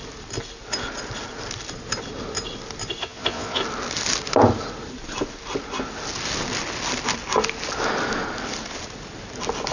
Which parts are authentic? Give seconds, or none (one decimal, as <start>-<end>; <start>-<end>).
0.0-3.0; 3.6-9.7